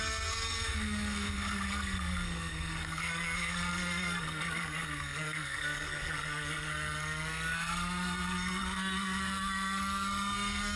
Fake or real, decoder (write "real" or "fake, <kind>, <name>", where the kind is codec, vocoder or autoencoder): fake, codec, SNAC